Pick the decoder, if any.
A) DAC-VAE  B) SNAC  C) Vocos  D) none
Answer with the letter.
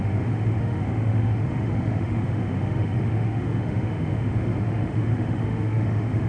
A